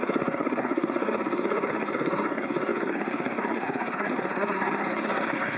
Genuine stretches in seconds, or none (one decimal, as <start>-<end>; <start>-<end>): none

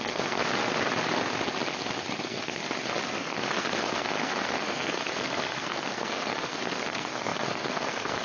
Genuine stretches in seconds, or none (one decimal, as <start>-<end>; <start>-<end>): 0.4-2.2; 2.6-3.1

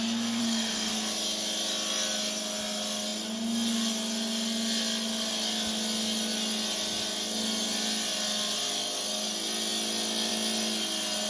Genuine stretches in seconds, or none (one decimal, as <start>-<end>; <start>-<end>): 0.0-0.4; 0.9-11.3

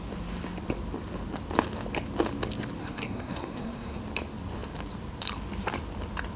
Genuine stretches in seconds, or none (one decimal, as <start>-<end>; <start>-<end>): 0.0-2.8; 4.0-6.4

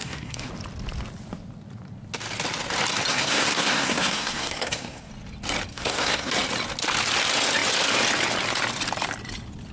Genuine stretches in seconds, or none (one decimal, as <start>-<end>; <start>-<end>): 0.5-3.1; 5.1-5.7; 6.3-9.7

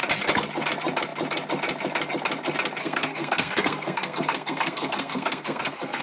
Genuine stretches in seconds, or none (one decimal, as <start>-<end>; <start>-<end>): 0.0-2.8